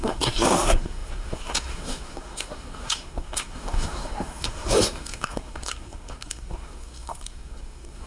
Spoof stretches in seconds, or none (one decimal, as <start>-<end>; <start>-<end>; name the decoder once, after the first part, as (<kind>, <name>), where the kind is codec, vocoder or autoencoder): 0.0-8.1 (codec, SNAC)